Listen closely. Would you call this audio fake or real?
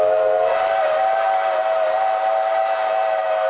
real